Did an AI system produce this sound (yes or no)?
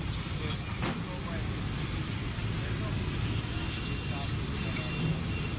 no